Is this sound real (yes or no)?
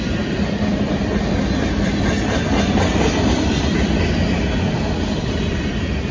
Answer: yes